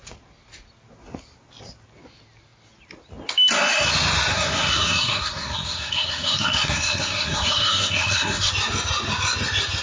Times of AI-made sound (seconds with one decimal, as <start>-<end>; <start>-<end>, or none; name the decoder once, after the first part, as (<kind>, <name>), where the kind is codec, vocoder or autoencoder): 4.3-8.5 (codec, SNAC)